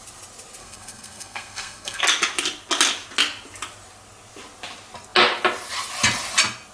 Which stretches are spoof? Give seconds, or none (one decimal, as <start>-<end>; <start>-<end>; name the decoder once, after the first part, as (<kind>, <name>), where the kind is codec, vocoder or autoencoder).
0.6-2.0 (codec, SNAC)